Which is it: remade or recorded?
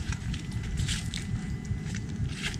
remade